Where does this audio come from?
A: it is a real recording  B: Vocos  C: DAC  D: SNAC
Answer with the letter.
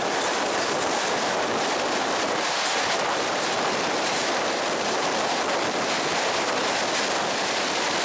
A